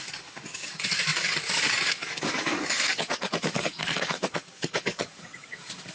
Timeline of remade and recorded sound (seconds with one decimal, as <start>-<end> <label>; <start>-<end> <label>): 0.0-5.9 remade